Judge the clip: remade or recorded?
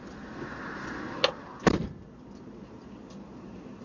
recorded